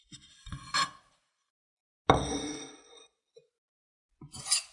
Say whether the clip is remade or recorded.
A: recorded